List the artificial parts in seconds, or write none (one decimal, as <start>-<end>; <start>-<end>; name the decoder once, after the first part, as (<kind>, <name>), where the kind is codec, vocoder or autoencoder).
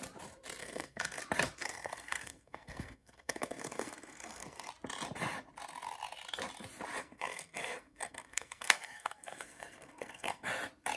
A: 0.6-1.2 (codec, SNAC); 1.6-4.7; 7.0-10.5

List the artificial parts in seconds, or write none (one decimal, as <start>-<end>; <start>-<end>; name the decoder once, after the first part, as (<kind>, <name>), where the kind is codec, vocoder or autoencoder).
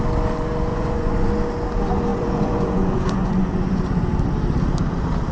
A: 0.7-1.3 (vocoder, Vocos); 2.1-4.1